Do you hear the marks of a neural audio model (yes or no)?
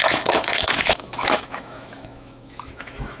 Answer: yes